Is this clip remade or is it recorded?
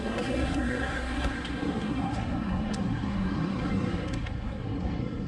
remade